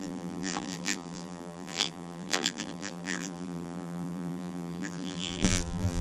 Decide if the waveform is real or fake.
fake